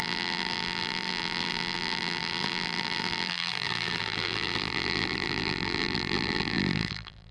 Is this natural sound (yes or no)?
no